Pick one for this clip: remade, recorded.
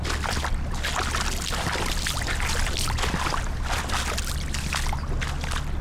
recorded